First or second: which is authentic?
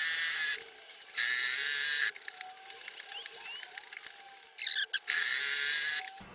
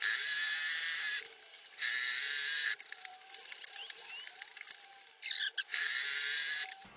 first